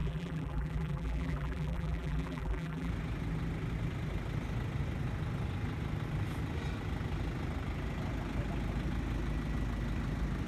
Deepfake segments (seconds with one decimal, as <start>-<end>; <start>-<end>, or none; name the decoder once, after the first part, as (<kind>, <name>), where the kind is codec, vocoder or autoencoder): 0.0-2.9 (vocoder, BigVGAN v2)